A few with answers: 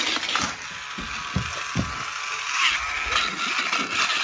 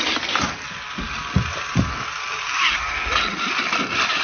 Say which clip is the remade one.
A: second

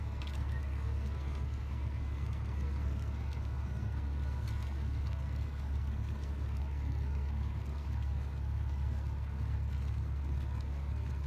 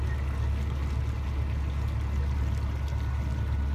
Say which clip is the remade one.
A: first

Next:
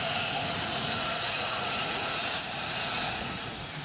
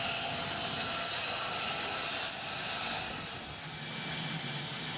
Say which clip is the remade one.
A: first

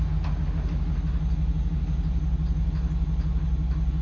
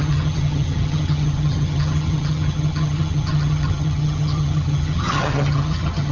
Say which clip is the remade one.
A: second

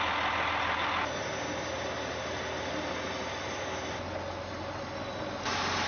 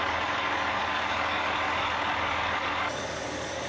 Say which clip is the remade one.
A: second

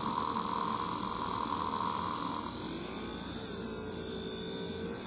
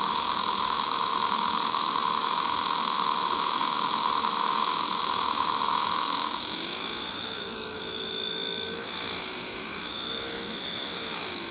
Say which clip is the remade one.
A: second